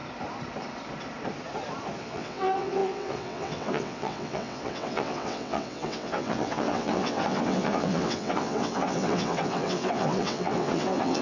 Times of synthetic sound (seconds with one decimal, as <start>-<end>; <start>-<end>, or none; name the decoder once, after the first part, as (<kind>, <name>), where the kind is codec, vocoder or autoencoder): 2.0-11.2 (vocoder, WaveNeXt)

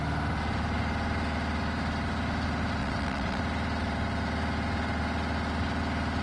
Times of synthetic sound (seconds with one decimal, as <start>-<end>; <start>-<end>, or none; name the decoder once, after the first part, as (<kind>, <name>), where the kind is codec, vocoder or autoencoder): 2.8-3.4 (vocoder, WaveNeXt)